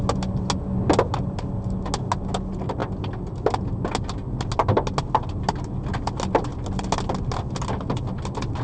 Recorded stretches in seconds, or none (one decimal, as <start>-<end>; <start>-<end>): 0.0-8.6